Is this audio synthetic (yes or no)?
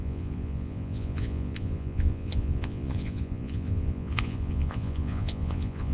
yes